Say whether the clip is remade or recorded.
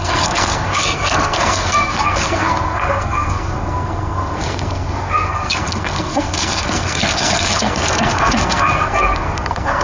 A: remade